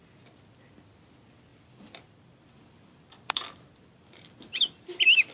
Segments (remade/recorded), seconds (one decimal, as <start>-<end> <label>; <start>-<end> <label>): 0.0-1.5 recorded; 1.5-4.7 remade; 4.7-5.3 recorded